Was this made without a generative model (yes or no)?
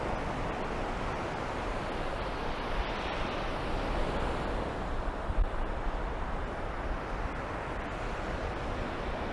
yes